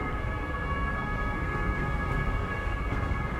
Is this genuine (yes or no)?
no